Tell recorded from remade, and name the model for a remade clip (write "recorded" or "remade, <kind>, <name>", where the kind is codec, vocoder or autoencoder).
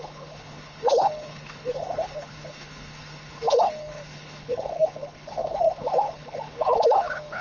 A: remade, codec, HILCodec